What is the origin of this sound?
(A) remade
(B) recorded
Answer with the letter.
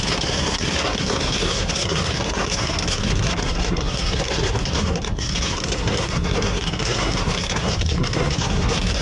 A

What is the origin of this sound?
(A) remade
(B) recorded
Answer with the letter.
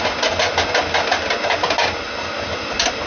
B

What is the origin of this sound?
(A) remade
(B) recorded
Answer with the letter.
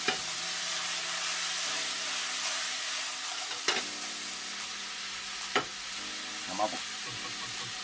B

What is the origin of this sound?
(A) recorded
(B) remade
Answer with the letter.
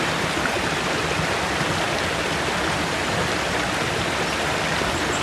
A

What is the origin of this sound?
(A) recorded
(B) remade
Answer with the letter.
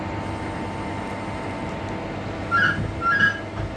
A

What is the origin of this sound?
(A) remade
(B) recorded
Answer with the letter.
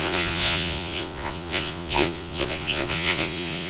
A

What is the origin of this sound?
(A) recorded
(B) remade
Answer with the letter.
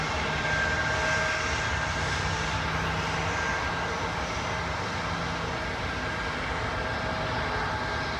A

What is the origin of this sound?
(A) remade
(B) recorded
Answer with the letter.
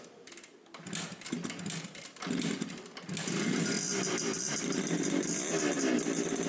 B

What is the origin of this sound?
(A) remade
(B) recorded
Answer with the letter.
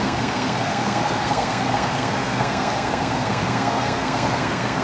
A